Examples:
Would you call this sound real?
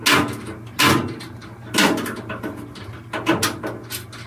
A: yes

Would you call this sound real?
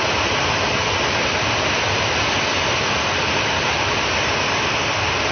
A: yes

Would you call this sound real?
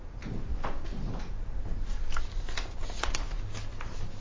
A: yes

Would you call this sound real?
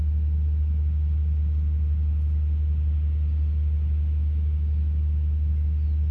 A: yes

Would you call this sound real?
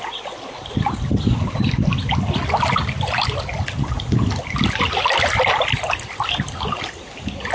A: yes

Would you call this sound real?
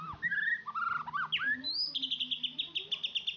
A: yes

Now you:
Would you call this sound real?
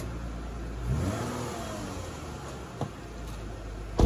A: yes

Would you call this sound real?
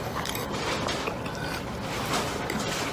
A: yes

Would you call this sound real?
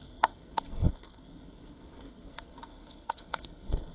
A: no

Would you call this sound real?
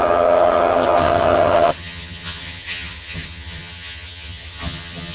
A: no